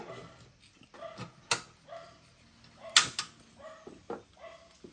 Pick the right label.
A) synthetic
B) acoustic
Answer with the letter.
B